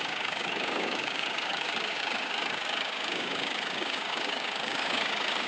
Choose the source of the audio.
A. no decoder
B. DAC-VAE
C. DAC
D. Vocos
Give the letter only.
C